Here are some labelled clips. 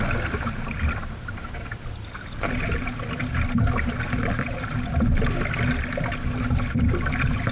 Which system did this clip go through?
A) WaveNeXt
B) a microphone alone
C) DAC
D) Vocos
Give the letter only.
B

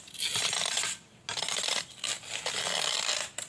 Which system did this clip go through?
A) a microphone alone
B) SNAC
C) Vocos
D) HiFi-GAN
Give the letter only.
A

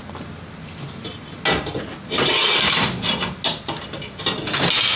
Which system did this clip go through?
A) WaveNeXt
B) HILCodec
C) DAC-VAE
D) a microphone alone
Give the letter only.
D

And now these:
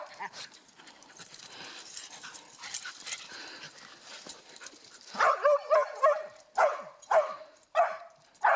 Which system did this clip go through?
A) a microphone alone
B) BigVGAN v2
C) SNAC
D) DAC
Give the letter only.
B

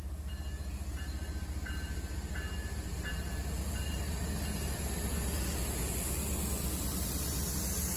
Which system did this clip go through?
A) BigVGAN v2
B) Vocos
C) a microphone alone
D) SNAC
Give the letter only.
C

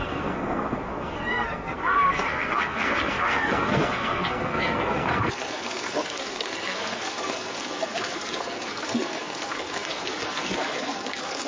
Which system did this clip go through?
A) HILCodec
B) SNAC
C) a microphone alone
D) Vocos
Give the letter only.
B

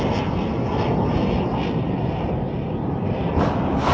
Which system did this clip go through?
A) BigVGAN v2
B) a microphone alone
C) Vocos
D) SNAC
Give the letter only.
B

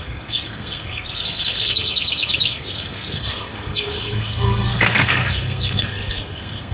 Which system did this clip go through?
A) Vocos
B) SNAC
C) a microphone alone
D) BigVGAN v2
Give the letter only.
B